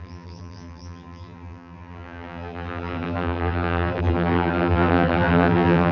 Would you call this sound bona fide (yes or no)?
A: no